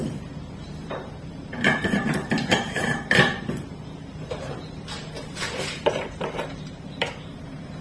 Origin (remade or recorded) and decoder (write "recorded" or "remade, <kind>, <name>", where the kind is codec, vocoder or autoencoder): remade, vocoder, BigVGAN v2